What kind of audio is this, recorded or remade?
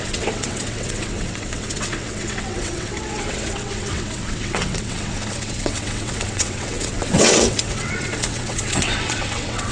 remade